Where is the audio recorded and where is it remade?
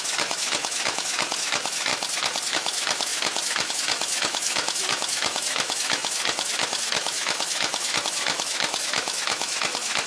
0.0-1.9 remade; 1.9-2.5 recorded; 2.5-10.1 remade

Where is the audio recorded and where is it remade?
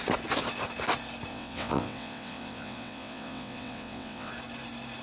0.0-1.3 recorded; 1.3-4.3 remade; 4.3-5.0 recorded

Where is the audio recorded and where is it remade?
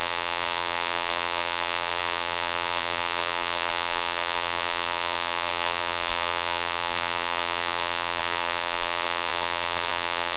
0.0-10.4 remade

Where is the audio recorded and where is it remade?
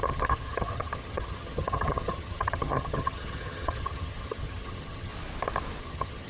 0.0-5.1 remade; 5.1-5.8 recorded; 5.8-6.3 remade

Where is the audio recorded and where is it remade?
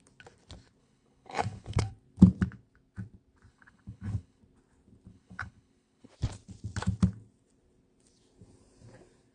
0.0-0.8 recorded; 0.8-1.9 remade; 1.9-3.5 recorded; 3.5-4.4 remade; 4.4-5.1 recorded; 5.1-6.1 remade; 6.1-9.3 recorded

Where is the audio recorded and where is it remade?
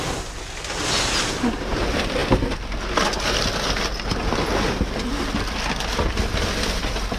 0.0-7.2 recorded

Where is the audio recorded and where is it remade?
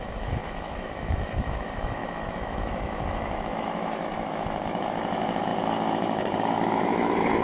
0.0-7.4 remade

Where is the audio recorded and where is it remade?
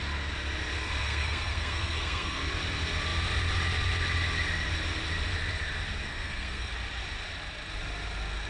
0.0-1.0 recorded; 1.0-2.5 remade; 2.5-6.1 recorded; 6.1-6.7 remade; 6.7-8.5 recorded